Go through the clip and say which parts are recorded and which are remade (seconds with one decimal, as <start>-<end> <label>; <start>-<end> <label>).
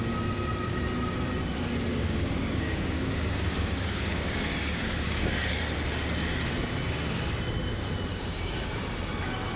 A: 0.0-1.9 recorded; 1.9-5.5 remade; 5.5-8.1 recorded; 8.1-8.8 remade; 8.8-9.6 recorded